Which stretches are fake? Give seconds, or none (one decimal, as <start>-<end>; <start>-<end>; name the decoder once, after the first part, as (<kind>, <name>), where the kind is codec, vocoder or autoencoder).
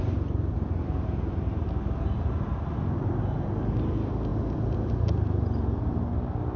none